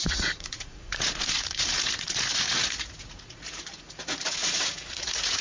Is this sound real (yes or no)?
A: no